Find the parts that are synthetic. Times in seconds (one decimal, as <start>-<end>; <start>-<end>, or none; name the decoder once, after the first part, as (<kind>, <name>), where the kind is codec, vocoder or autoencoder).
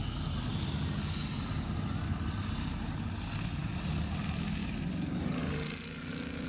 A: 4.6-5.4 (vocoder, BigVGAN v2)